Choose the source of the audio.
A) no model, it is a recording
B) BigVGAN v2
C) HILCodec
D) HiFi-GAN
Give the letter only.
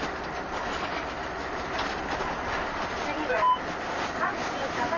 A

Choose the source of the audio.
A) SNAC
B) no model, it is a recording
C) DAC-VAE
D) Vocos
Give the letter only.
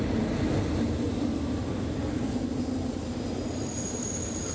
B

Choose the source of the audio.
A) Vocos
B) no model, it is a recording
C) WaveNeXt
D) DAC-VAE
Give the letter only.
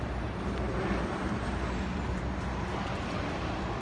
B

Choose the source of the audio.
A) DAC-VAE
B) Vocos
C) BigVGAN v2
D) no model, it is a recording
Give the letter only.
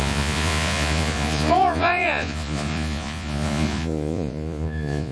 B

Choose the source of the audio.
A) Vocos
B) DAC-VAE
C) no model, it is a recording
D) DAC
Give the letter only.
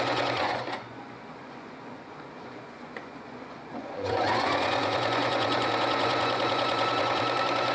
A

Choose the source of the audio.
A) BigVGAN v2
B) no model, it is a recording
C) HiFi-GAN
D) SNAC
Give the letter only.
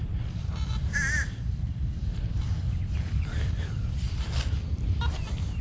A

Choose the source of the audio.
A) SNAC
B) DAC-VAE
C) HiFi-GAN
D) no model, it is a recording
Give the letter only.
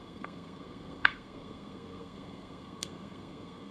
A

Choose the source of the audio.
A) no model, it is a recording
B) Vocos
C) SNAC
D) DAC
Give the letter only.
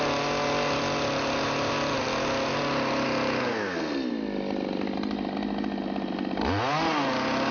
A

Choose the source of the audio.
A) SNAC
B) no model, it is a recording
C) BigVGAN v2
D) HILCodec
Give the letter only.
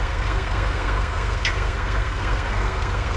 A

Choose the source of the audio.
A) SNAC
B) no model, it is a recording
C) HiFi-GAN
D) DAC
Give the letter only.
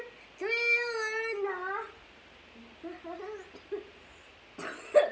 B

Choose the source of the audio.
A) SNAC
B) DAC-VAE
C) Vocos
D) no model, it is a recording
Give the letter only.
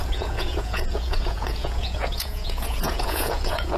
C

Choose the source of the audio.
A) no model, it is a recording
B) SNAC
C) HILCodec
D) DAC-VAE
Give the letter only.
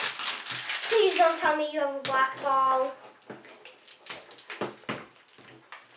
A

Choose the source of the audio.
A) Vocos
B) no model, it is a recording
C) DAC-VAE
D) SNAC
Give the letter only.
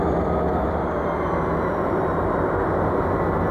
B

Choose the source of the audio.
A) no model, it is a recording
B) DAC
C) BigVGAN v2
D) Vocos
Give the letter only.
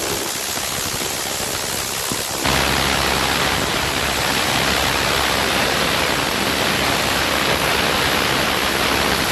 A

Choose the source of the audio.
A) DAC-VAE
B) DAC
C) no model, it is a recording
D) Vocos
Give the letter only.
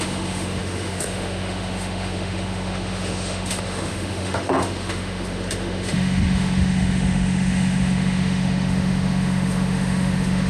A